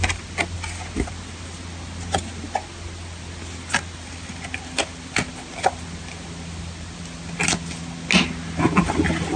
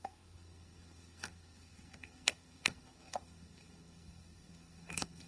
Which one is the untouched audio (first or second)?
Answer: first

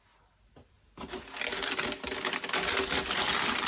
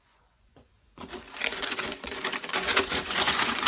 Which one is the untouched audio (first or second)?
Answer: first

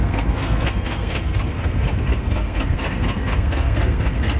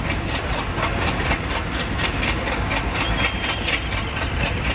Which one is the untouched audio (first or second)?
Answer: second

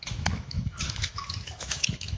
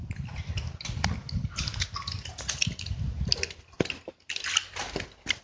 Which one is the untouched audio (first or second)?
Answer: second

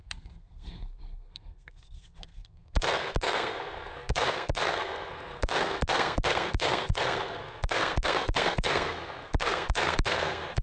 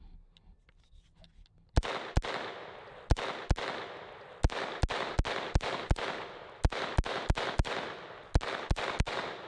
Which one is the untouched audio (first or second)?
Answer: second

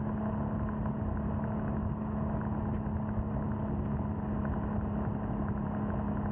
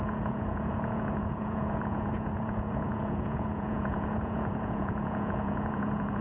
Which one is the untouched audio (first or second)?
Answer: first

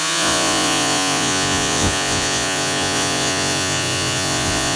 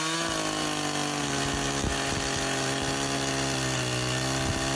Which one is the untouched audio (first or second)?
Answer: second